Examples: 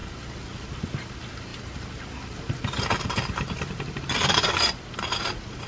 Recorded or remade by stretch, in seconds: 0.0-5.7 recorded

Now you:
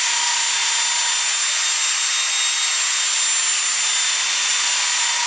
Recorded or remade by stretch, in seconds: 0.0-5.3 recorded

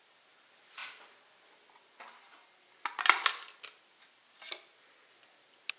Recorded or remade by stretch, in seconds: 0.0-5.8 recorded

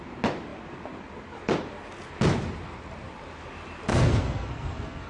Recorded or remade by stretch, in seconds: 0.0-3.9 recorded; 3.9-5.1 remade

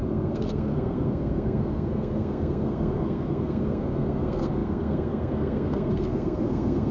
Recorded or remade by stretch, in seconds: 0.0-6.9 remade